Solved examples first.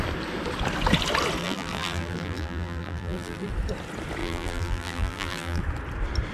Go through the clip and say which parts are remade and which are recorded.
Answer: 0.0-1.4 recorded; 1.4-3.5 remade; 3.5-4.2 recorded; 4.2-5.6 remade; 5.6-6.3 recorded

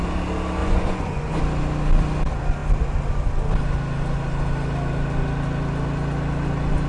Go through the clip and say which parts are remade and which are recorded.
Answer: 0.0-0.6 recorded; 0.6-1.4 remade; 1.4-6.9 recorded

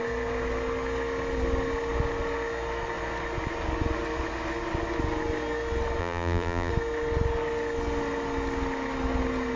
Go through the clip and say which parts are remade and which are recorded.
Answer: 0.0-6.0 recorded; 6.0-6.7 remade; 6.7-9.6 recorded